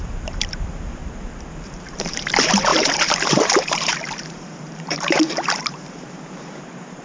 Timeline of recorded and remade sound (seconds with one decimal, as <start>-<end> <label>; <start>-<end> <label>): 0.0-1.0 remade; 1.0-1.5 recorded; 1.5-7.0 remade